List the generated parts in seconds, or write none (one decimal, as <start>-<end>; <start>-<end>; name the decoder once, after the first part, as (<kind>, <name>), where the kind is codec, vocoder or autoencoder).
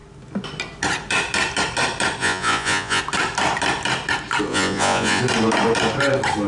2.2-3.0 (vocoder, Vocos); 4.5-5.2